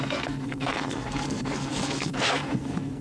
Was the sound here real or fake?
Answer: fake